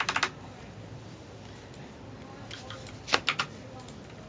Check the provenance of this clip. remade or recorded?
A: recorded